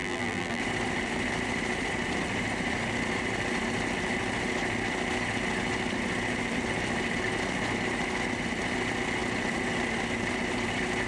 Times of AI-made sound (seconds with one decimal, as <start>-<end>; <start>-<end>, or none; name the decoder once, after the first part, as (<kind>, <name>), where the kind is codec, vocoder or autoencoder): 0.0-0.6 (vocoder, BigVGAN v2)